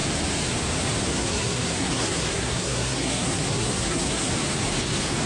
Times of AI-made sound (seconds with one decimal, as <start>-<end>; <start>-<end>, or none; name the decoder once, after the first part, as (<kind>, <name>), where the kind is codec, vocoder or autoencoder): 1.1-4.3 (codec, SNAC)